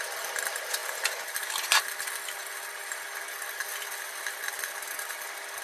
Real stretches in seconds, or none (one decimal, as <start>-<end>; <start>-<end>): 0.0-5.6